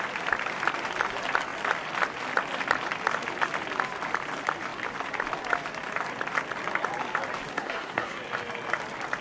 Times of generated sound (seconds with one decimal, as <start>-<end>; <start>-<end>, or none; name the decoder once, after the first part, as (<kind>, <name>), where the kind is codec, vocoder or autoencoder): 7.5-8.2 (codec, SNAC)